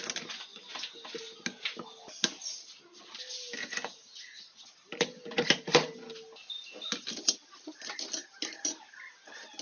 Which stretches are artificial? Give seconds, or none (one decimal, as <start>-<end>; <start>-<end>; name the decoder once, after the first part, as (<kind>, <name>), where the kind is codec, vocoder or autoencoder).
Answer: none